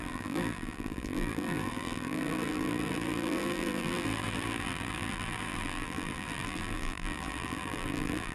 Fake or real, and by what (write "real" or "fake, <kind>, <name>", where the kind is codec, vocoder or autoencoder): fake, vocoder, BigVGAN v2